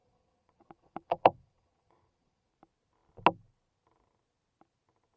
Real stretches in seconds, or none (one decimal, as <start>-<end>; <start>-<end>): 2.5-5.2